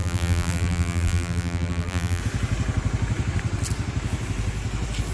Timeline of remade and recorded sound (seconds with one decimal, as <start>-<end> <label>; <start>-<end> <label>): 0.0-2.2 remade; 2.2-5.1 recorded